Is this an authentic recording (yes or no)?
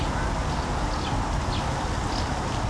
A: yes